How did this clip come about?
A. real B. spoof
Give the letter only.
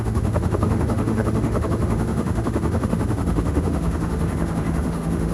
B